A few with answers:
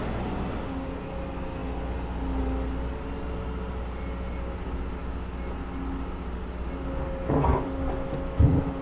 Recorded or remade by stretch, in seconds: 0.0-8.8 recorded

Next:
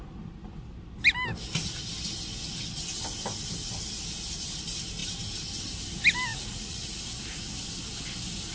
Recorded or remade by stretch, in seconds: 0.0-6.3 recorded; 6.3-7.0 remade; 7.0-8.5 recorded

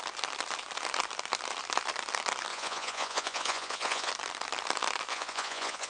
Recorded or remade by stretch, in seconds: 0.0-2.5 recorded; 2.5-4.1 remade; 4.1-5.1 recorded; 5.1-5.9 remade

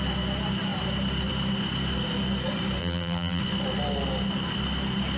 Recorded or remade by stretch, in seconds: 0.0-2.8 recorded; 2.8-3.4 remade; 3.4-5.2 recorded